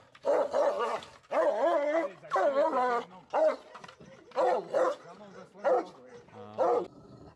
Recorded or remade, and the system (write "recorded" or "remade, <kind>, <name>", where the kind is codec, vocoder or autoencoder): recorded